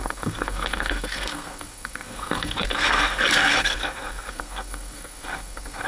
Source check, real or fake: fake